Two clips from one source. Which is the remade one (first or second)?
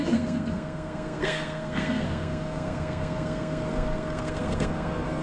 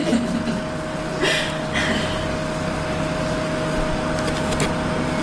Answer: first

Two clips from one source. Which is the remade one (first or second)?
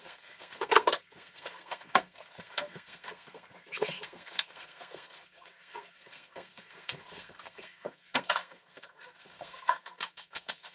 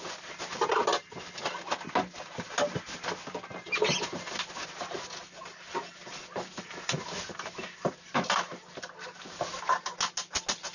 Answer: first